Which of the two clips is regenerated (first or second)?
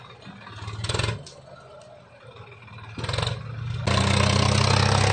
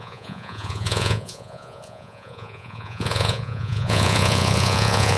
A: second